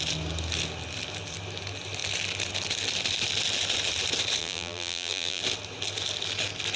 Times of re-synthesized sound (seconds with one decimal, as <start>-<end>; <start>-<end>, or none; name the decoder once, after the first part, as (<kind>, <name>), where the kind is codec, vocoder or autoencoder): 4.4-5.4 (vocoder, BigVGAN v2)